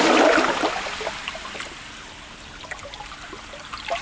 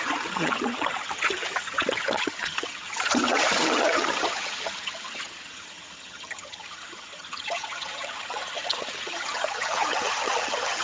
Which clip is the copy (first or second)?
second